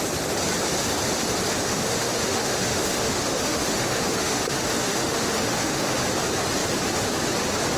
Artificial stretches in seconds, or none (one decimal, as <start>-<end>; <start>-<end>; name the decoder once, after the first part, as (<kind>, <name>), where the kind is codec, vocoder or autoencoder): 1.5-6.0 (autoencoder, DAC-VAE)